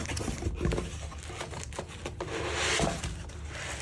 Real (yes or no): yes